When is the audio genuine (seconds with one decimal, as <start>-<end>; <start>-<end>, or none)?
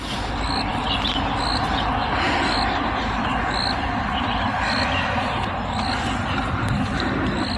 0.0-7.6